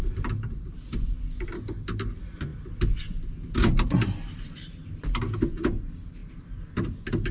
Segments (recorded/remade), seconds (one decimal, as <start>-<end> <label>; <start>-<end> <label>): 0.0-7.3 recorded